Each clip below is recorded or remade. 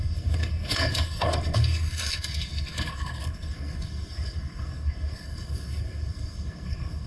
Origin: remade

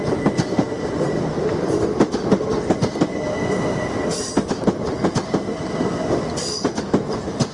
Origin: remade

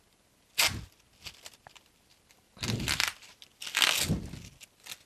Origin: recorded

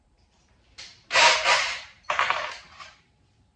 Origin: remade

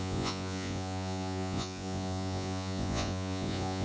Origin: remade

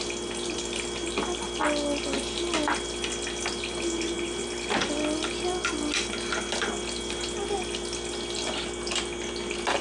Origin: recorded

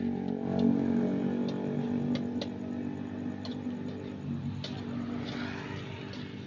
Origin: recorded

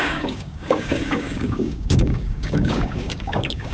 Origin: remade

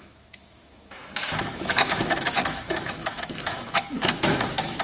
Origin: remade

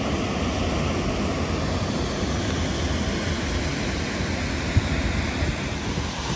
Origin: recorded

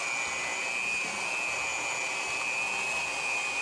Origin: recorded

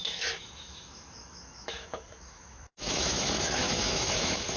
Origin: remade